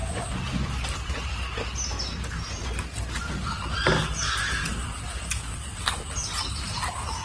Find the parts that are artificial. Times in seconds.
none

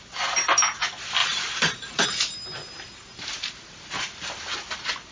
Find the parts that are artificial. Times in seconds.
1.2-4.3 (vocoder, BigVGAN v2)

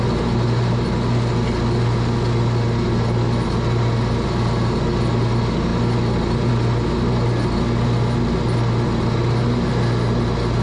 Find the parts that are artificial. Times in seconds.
none

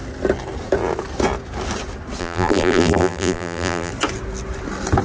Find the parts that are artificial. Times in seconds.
2.2-3.9 (vocoder, BigVGAN v2)

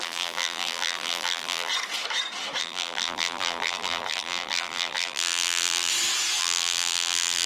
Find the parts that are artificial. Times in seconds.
0.0-1.7 (vocoder, BigVGAN v2); 2.6-5.9; 6.4-7.5

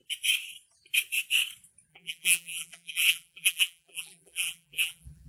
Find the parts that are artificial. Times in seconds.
1.9-5.3 (vocoder, BigVGAN v2)